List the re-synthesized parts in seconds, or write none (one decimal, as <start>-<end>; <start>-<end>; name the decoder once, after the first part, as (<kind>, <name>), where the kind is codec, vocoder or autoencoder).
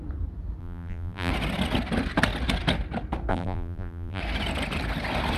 0.6-1.3 (vocoder, BigVGAN v2); 3.3-4.2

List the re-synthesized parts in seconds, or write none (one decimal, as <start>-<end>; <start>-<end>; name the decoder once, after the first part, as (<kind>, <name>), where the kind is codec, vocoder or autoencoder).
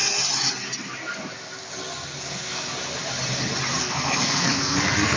2.2-2.7 (codec, SNAC); 3.8-5.2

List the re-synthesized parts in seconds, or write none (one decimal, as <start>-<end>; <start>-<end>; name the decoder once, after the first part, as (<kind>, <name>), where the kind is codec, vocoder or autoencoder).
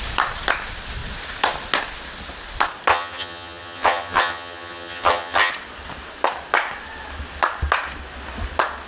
2.9-5.5 (vocoder, HiFi-GAN)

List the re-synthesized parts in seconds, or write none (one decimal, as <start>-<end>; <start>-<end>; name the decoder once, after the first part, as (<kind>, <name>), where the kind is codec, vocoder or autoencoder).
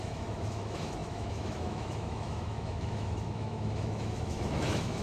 0.0-5.0 (autoencoder, DAC-VAE)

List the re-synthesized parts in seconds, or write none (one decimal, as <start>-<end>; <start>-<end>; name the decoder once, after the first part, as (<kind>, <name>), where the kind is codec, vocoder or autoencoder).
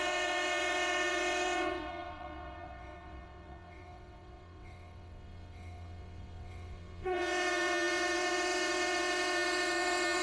0.0-10.2 (vocoder, WaveNeXt)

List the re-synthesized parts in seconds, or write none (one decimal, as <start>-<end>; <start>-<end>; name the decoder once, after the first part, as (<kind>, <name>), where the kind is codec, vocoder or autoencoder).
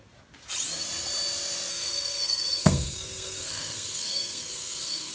1.7-5.1 (codec, SNAC)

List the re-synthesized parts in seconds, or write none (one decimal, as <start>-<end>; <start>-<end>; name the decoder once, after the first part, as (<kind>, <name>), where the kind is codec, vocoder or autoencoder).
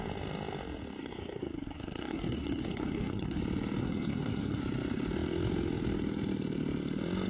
1.0-3.4 (codec, SNAC); 3.8-4.6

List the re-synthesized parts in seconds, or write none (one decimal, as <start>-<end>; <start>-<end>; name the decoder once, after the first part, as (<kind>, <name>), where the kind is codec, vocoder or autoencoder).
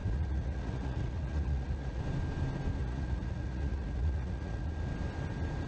0.0-2.0 (vocoder, Vocos); 2.8-4.7